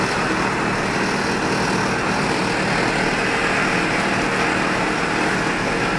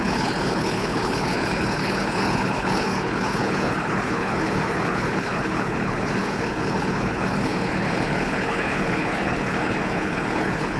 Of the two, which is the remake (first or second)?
second